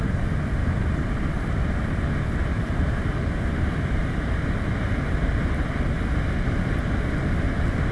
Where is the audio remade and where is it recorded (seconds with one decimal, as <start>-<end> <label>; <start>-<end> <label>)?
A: 0.0-0.6 recorded; 0.6-1.9 remade; 1.9-2.5 recorded; 2.5-5.6 remade; 5.6-7.9 recorded